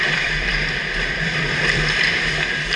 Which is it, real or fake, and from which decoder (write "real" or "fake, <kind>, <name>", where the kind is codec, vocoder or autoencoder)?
fake, vocoder, BigVGAN v2